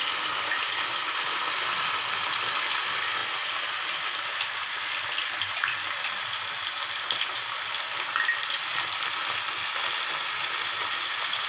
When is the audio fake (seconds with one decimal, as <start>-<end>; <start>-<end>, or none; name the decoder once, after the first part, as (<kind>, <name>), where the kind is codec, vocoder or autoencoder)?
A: none